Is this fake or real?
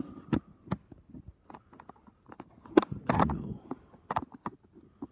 real